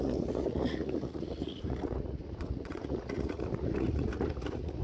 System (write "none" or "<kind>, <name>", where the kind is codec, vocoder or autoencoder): vocoder, Vocos